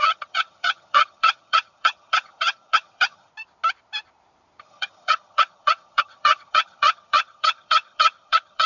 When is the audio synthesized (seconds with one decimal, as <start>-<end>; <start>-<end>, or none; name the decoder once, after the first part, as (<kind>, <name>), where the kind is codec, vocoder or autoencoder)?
0.0-3.3 (vocoder, HiFi-GAN); 4.6-8.7

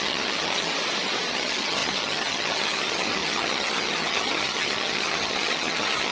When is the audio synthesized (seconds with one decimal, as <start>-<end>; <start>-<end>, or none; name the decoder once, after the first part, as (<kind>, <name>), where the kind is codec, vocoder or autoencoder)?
0.0-0.7 (vocoder, HiFi-GAN); 1.3-6.1

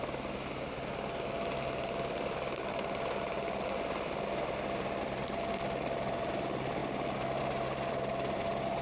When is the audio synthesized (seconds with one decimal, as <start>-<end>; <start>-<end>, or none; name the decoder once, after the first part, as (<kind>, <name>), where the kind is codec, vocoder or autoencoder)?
none